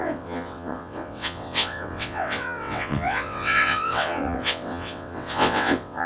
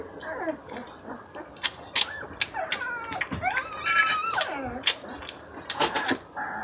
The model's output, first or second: first